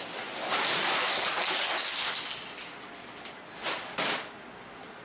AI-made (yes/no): no